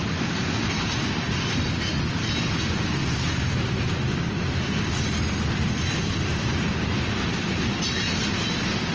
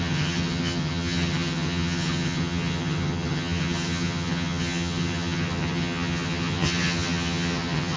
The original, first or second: first